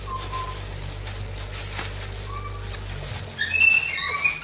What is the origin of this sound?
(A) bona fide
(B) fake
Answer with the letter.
A